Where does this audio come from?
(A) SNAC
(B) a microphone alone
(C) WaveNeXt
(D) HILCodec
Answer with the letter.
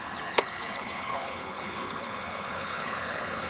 D